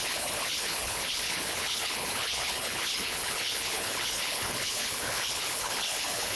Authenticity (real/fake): fake